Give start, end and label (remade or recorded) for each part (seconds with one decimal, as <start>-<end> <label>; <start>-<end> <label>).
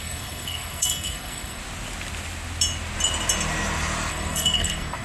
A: 0.0-1.6 remade; 1.6-4.1 recorded; 4.1-5.0 remade